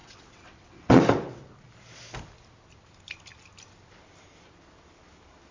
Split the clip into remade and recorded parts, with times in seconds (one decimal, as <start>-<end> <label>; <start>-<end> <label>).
0.0-1.0 remade; 1.0-5.5 recorded

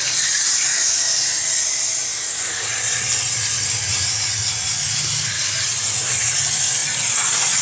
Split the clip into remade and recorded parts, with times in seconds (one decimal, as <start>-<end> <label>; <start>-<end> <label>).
0.0-7.6 recorded

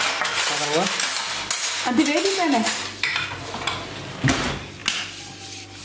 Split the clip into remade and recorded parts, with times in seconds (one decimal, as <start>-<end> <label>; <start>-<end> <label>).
0.0-5.8 recorded

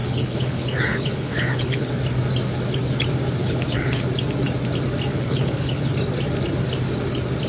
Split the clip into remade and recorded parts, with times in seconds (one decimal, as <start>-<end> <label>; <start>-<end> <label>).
0.0-1.9 remade; 1.9-3.4 recorded; 3.4-4.0 remade; 4.0-5.1 recorded; 5.1-5.9 remade; 5.9-7.5 recorded

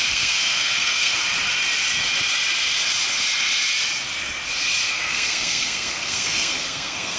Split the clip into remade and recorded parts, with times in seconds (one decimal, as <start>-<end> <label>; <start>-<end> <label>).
0.0-1.2 remade; 1.2-4.9 recorded; 4.9-7.2 remade

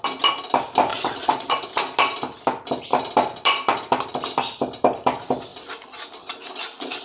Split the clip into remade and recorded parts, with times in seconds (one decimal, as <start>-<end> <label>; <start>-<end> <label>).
0.0-0.9 recorded; 0.9-1.8 remade; 1.8-7.0 recorded

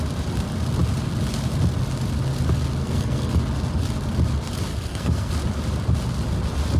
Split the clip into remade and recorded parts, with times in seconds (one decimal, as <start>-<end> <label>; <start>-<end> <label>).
0.0-2.8 recorded; 2.8-3.3 remade; 3.3-4.7 recorded; 4.7-5.3 remade; 5.3-6.8 recorded

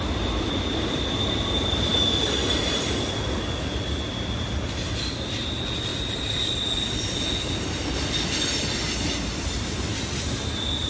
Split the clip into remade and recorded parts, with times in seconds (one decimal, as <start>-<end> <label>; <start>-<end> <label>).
0.0-10.9 recorded